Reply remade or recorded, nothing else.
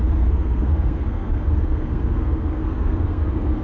remade